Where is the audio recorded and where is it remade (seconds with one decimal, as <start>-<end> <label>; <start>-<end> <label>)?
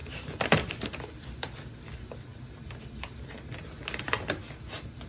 0.0-0.7 remade; 0.7-5.1 recorded